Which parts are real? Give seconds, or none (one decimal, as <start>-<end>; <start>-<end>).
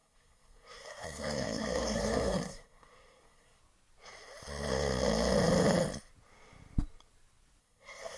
3.6-7.6